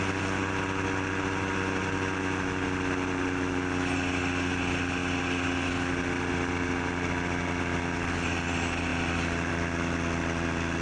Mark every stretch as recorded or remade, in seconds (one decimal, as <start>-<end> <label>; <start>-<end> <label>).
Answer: 0.0-10.8 recorded